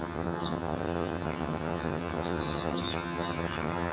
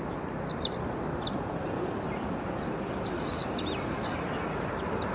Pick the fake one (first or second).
first